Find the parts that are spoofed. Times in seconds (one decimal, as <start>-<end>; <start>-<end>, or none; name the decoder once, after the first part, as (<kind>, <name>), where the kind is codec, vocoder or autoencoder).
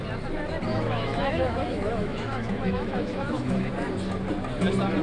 0.7-3.7 (autoencoder, DAC-VAE)